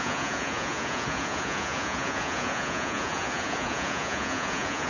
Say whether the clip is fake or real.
fake